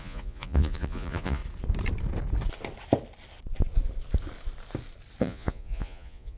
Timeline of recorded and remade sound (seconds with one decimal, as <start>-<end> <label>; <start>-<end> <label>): 0.0-1.4 remade; 1.4-5.2 recorded; 5.2-6.4 remade